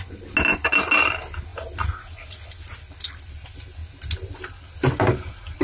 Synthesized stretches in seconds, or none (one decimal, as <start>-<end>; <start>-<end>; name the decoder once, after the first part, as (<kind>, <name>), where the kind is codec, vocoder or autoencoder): none